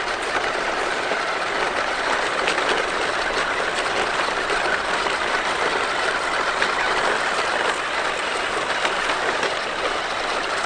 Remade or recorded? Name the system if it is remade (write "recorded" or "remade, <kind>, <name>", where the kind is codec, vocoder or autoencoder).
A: recorded